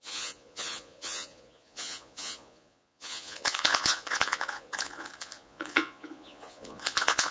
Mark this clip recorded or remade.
remade